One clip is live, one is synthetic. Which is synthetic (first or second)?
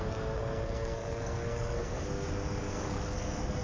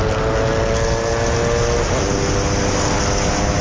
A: first